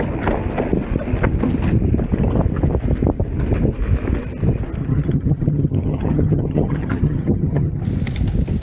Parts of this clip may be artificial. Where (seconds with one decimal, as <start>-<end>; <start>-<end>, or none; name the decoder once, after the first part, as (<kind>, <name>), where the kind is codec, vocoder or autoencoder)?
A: 4.8-7.8 (vocoder, HiFi-GAN)